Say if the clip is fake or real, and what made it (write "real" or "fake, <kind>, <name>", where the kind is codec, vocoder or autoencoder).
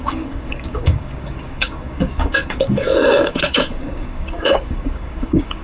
fake, codec, DAC